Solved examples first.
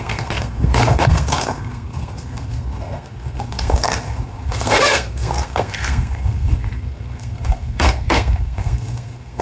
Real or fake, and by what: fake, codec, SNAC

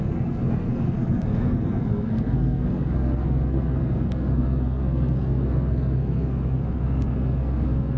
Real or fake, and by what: fake, codec, SNAC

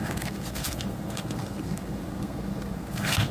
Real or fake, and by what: fake, codec, SNAC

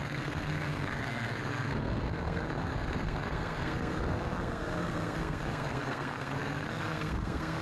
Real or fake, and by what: fake, codec, SNAC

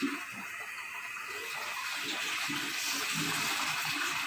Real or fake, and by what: real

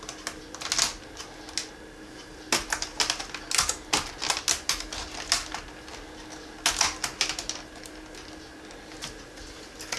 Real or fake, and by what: real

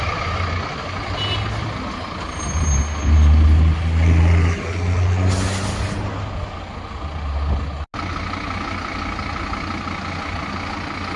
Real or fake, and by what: real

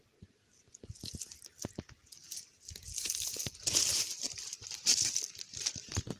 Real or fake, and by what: real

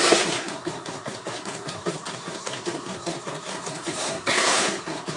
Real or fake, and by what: fake, codec, SNAC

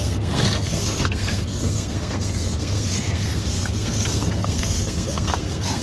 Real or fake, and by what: fake, codec, SNAC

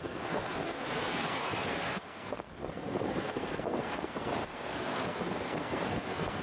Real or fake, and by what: fake, codec, SNAC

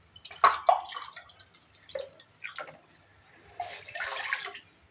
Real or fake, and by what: real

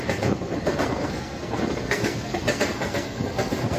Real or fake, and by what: fake, codec, SNAC